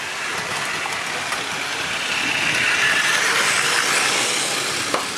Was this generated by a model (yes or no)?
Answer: no